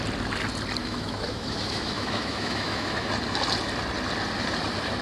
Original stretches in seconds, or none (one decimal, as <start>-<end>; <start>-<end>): 0.0-0.8; 3.1-5.0